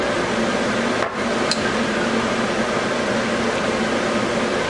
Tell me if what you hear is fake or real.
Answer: real